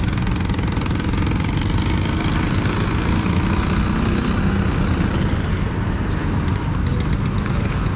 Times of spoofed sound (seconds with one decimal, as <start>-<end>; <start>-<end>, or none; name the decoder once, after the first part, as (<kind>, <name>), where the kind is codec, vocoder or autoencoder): none